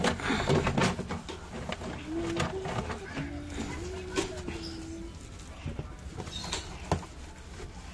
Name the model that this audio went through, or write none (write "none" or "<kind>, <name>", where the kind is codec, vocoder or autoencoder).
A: none